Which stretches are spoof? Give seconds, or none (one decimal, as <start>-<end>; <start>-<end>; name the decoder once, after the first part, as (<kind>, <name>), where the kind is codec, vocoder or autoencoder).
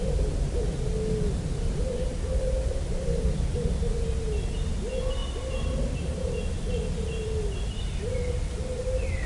none